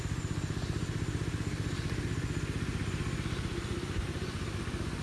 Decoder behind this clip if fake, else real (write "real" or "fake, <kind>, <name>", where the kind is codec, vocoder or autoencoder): real